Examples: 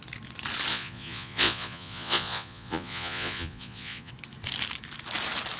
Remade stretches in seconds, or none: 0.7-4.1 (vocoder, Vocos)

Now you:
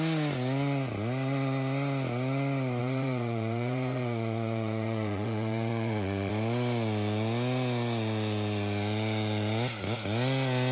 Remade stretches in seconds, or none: 2.8-6.3 (vocoder, Vocos)

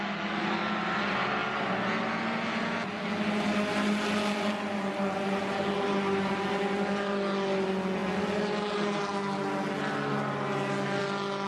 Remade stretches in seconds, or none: none

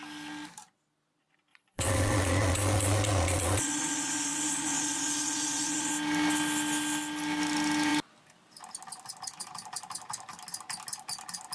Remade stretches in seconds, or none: 1.5-5.9 (vocoder, Vocos)

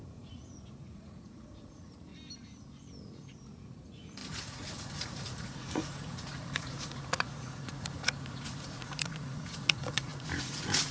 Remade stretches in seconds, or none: 0.0-2.1 (vocoder, Vocos); 3.0-10.9

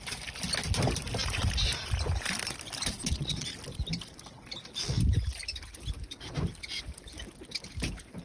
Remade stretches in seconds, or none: 3.0-3.5 (vocoder, Vocos)

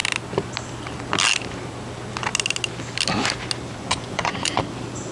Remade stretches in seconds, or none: 3.8-4.6 (vocoder, Vocos)